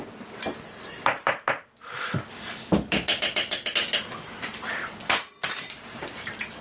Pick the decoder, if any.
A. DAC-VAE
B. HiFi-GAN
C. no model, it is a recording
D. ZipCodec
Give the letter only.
C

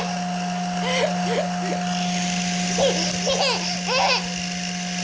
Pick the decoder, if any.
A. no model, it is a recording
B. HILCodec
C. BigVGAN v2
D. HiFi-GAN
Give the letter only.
A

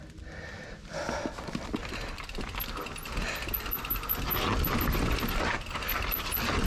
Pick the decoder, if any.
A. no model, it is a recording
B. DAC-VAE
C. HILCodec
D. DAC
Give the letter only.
A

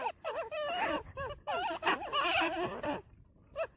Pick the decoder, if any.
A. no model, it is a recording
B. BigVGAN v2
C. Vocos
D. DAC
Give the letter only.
B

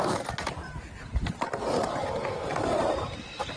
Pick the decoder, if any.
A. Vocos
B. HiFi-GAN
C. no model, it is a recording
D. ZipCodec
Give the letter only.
C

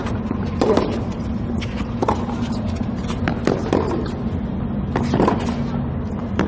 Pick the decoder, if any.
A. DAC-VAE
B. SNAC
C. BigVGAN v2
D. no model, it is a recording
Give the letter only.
D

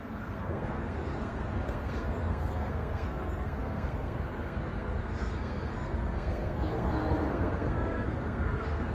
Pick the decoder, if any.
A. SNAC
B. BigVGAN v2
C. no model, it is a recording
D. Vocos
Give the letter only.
A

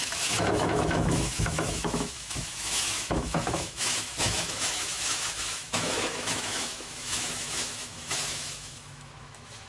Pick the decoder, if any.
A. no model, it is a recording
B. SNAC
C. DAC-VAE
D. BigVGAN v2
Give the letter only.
C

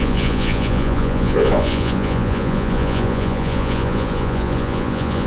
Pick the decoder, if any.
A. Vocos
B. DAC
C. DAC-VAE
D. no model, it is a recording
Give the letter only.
A